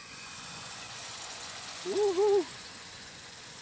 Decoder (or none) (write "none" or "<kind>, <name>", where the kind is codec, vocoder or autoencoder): vocoder, Vocos